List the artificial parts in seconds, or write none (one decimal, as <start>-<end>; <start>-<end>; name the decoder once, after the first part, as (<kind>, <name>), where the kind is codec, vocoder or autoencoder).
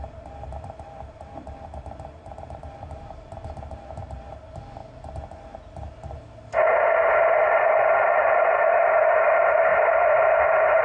0.0-4.8 (vocoder, BigVGAN v2); 8.6-9.7; 10.3-10.8